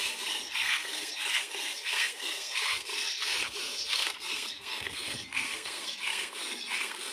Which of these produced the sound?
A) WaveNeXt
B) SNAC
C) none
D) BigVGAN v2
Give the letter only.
B